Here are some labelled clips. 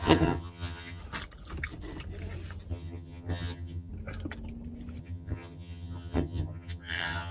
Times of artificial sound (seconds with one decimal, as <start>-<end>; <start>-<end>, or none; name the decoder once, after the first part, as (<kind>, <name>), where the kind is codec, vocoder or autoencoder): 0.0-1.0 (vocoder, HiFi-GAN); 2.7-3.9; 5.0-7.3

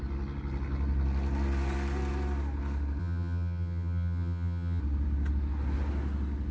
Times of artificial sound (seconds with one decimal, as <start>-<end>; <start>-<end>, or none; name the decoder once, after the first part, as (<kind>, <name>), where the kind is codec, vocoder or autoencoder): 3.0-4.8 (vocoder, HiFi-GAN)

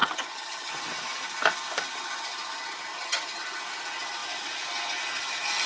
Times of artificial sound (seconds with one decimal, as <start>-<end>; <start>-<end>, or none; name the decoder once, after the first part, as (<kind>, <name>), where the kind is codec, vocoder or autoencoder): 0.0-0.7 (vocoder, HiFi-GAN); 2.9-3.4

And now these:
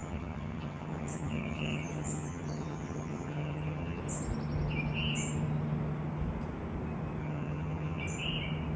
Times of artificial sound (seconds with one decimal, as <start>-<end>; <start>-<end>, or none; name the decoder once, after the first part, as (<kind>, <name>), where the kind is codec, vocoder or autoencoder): 0.0-4.0 (vocoder, HiFi-GAN); 7.2-8.0